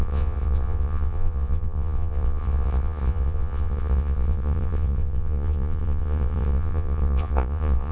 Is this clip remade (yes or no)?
yes